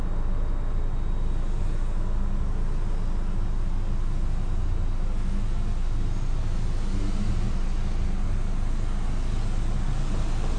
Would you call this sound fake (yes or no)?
no